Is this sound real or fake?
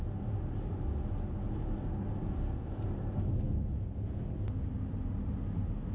real